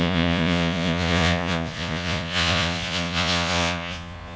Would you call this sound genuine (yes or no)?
no